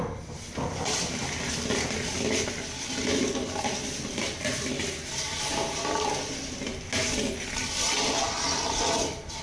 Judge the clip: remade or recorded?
recorded